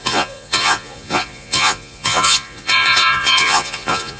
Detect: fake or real fake